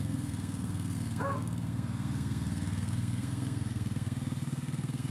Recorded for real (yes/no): no